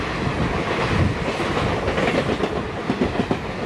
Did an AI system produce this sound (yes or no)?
no